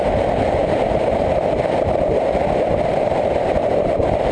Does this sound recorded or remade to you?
remade